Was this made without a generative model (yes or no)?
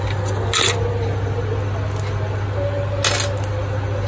yes